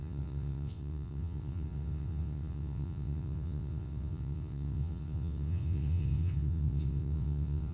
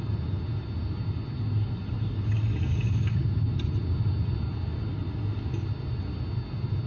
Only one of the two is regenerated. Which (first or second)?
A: first